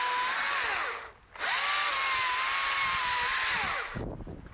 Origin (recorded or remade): recorded